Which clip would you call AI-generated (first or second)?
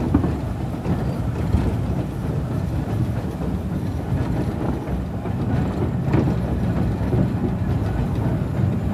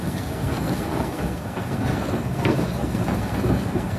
second